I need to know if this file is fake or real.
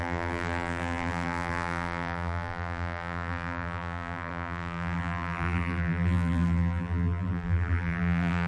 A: fake